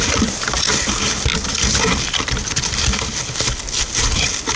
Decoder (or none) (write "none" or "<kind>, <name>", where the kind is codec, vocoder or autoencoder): none